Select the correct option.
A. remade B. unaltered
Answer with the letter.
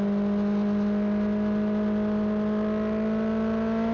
B